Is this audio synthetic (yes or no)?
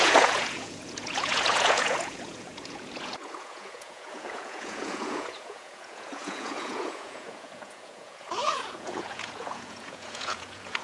yes